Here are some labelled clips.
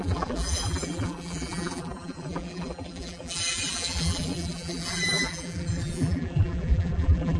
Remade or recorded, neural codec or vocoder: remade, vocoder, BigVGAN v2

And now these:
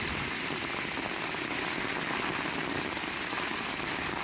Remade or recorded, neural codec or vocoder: recorded